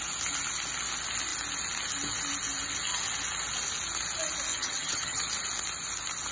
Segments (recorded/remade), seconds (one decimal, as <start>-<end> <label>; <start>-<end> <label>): 0.0-4.5 recorded; 4.5-5.2 remade; 5.2-6.3 recorded

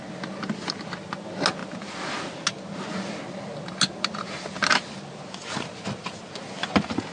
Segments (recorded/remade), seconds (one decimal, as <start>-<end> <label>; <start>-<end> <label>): 0.0-7.1 recorded